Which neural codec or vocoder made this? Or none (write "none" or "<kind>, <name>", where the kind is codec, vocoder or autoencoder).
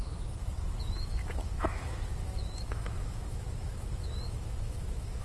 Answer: autoencoder, DAC-VAE